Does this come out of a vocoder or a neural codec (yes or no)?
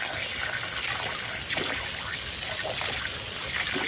no